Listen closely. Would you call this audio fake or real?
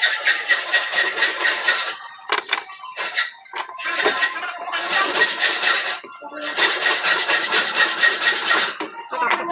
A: fake